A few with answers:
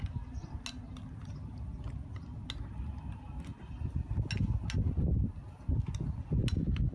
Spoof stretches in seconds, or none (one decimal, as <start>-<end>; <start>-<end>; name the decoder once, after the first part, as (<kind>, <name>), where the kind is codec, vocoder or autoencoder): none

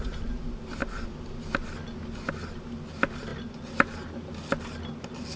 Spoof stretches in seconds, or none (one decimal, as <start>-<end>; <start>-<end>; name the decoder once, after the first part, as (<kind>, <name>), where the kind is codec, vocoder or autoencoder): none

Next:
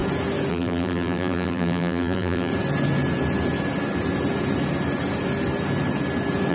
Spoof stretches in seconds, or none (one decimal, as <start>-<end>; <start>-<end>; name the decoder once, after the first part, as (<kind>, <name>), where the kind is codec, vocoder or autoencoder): 0.5-2.5 (vocoder, BigVGAN v2)

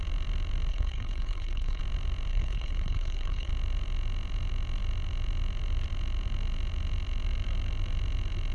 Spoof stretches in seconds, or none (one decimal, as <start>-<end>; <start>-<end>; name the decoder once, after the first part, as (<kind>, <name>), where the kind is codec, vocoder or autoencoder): 0.7-1.8 (codec, HILCodec); 2.3-3.5